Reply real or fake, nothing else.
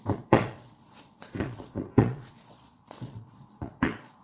fake